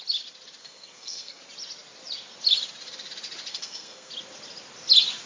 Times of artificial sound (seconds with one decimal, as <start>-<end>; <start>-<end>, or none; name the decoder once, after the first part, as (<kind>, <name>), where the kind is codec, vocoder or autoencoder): 0.6-1.4 (codec, SNAC); 3.5-4.1